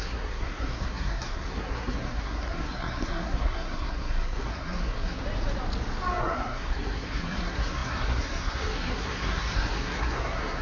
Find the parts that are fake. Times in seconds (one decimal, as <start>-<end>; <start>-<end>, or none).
0.0-5.2; 6.2-10.6